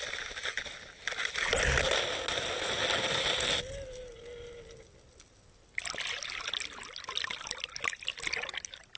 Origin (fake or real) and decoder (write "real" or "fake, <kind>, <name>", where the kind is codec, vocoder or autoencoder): real